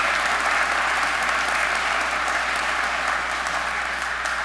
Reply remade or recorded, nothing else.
recorded